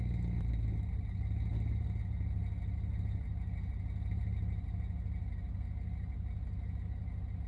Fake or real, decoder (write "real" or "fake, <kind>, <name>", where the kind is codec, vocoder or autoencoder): real